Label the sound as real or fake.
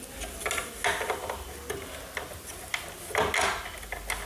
real